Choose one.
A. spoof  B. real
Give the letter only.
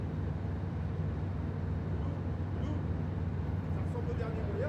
B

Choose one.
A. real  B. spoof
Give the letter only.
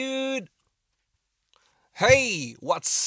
A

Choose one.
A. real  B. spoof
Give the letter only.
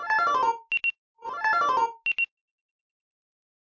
A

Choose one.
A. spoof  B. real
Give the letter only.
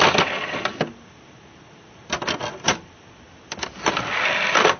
B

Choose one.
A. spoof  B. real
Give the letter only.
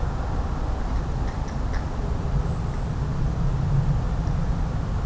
B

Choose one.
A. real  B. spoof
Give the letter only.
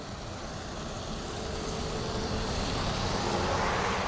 A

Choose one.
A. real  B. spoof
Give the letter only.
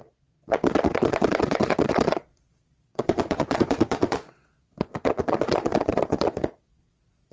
B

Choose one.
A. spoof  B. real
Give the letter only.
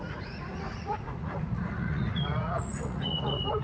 A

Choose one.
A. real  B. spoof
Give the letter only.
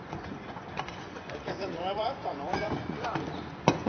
B